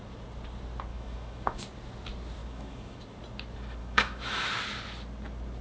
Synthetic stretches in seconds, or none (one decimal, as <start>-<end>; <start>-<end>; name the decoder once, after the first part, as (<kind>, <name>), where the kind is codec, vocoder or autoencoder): 0.9-1.6 (autoencoder, DAC-VAE); 2.4-3.0; 3.8-4.5